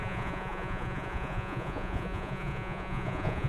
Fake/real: fake